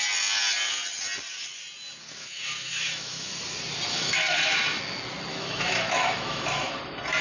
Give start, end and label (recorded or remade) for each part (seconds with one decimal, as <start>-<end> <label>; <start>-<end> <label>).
0.0-2.0 recorded; 2.0-3.4 remade; 3.4-3.9 recorded; 3.9-4.8 remade; 4.8-5.3 recorded; 5.3-6.7 remade; 6.7-7.2 recorded